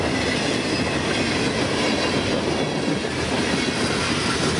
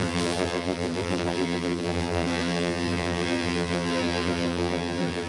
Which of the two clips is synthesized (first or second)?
second